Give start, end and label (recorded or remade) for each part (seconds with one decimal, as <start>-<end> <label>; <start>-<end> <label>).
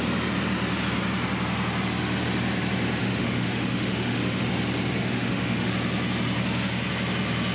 0.0-3.0 recorded; 3.0-4.4 remade; 4.4-5.0 recorded; 5.0-5.7 remade; 5.7-7.5 recorded